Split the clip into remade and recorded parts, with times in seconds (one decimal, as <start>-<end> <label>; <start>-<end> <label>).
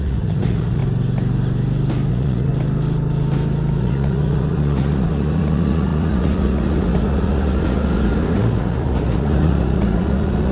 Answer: 0.0-0.8 remade; 0.8-2.1 recorded; 2.1-2.5 remade; 2.5-3.8 recorded; 3.8-10.5 remade